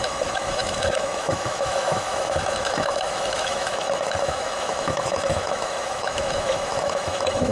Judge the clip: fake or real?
fake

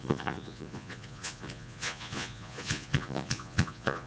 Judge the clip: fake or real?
fake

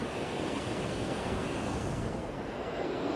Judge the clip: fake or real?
fake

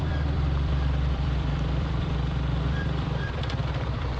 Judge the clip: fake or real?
fake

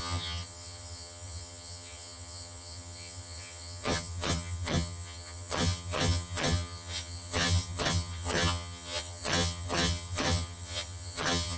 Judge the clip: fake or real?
fake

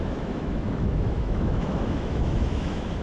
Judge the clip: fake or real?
fake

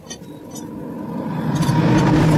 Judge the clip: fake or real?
real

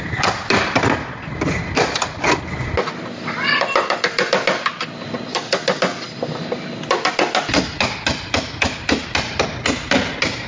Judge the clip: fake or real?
real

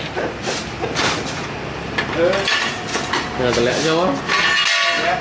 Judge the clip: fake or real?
real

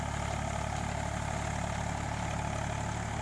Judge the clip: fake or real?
real